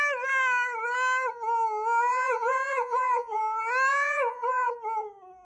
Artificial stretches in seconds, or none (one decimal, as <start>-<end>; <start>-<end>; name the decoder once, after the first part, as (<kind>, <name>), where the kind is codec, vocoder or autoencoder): 2.1-3.4 (vocoder, Vocos); 3.9-4.7